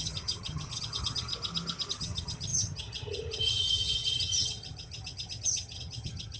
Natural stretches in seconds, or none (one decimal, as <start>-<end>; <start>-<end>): 1.3-1.9